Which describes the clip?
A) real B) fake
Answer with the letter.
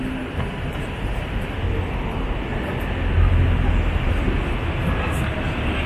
A